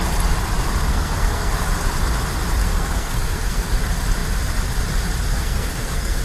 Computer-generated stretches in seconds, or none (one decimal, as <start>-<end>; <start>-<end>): 0.9-1.5; 2.6-3.7; 5.3-6.2